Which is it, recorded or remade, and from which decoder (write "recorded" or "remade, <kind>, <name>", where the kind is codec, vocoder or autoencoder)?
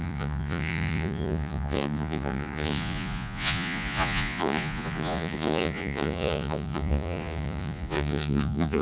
remade, vocoder, Vocos